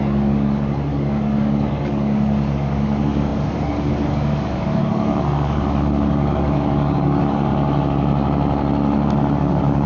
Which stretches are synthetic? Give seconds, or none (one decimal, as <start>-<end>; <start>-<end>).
0.0-7.5; 9.4-9.9